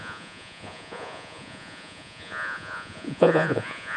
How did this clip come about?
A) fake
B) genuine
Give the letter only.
A